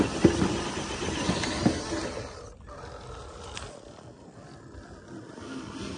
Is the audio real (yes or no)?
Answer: yes